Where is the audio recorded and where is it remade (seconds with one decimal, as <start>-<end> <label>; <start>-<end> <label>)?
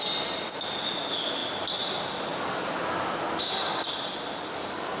0.0-5.0 recorded